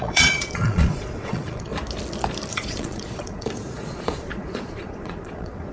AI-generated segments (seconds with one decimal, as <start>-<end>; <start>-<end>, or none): 0.0-1.7; 2.5-5.7